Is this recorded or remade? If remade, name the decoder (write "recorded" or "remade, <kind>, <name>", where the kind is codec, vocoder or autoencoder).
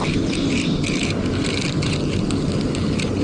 recorded